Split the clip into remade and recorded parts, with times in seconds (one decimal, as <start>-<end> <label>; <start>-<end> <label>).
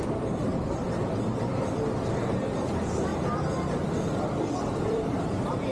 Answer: 0.0-3.1 remade; 3.1-4.5 recorded; 4.5-5.7 remade